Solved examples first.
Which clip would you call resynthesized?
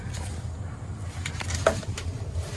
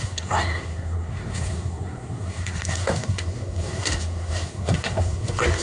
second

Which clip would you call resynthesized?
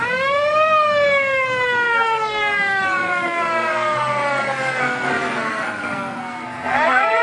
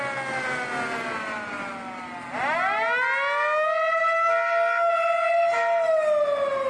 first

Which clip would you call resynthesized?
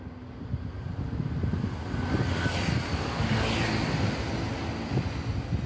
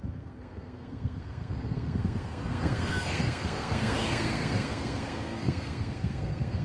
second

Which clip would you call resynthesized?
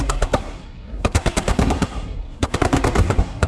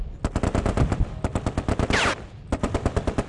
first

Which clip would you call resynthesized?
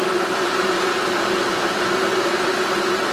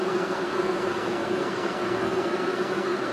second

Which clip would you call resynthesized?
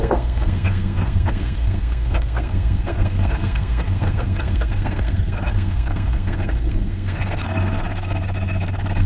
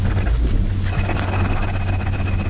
first